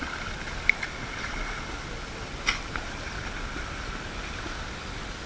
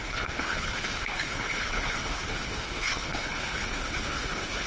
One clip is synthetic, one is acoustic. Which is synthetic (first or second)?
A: second